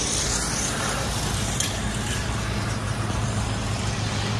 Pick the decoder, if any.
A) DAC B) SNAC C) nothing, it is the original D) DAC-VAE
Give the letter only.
C